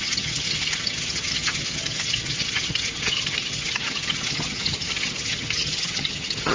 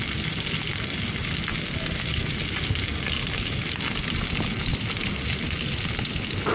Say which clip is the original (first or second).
second